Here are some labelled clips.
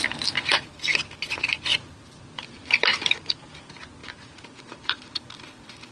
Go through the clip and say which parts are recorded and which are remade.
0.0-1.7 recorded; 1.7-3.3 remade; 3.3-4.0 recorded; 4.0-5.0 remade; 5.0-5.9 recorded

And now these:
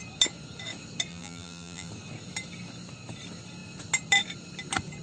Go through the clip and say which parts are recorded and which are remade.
0.0-1.1 recorded; 1.1-1.9 remade; 1.9-5.0 recorded

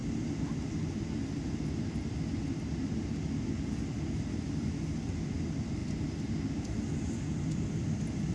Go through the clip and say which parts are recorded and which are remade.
0.0-8.3 recorded

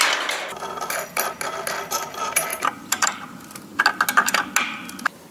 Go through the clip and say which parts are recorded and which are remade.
0.0-2.5 recorded; 2.5-3.2 remade; 3.2-5.3 recorded

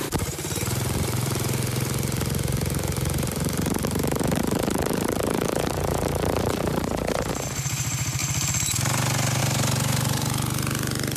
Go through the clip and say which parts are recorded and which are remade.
0.0-8.2 remade; 8.2-9.4 recorded; 9.4-11.2 remade

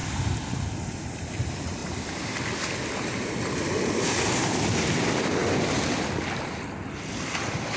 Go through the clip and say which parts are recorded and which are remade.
0.0-0.8 recorded; 0.8-1.8 remade; 1.8-3.4 recorded; 3.4-5.4 remade; 5.4-6.7 recorded; 6.7-7.8 remade

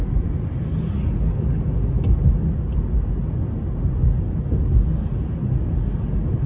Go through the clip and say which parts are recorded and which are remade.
0.0-6.5 recorded